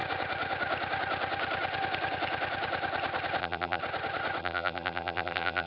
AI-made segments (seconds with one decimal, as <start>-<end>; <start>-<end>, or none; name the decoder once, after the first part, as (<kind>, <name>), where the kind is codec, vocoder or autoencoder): 3.4-3.8 (vocoder, BigVGAN v2); 4.4-5.7